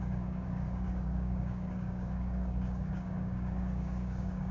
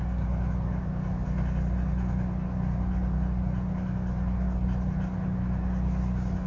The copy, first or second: first